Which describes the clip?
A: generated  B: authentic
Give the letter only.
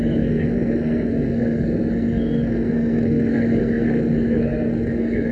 A